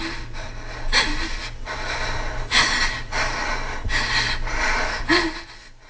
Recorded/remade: recorded